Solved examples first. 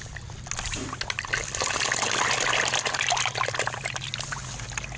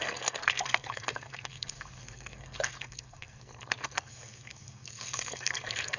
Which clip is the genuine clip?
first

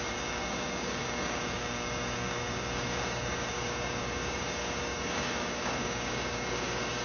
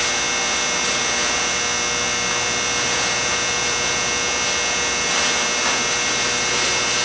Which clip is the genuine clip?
second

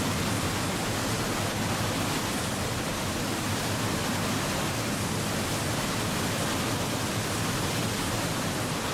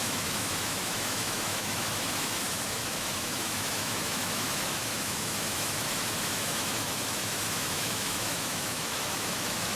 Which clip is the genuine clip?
first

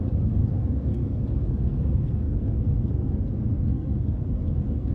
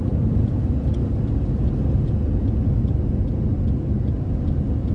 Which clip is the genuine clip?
second